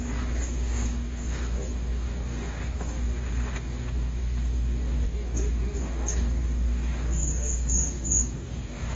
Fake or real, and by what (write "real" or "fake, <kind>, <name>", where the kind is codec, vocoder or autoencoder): fake, codec, DAC